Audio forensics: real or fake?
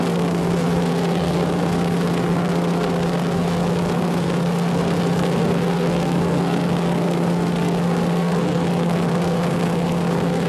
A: fake